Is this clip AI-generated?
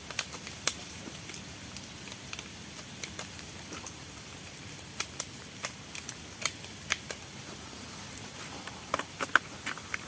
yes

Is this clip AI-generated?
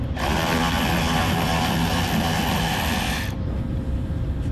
yes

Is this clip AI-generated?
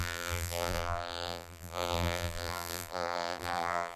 yes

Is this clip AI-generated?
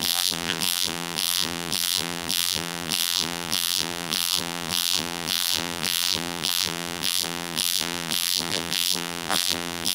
yes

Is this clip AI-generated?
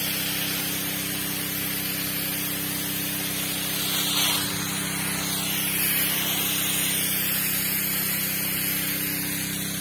no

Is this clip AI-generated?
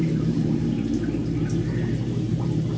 yes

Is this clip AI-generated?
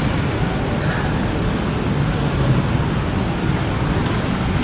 no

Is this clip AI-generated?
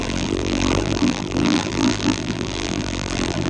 yes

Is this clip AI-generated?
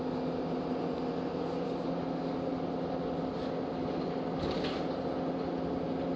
no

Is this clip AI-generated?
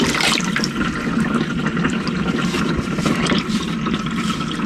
no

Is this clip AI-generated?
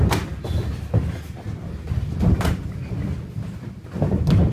no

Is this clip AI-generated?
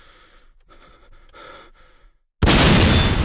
no